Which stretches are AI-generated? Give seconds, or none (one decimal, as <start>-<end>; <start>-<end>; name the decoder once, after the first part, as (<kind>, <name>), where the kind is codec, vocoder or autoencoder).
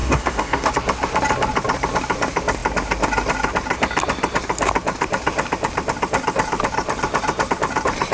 0.0-0.7 (codec, DAC)